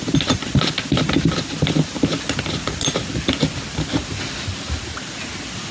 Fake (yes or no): no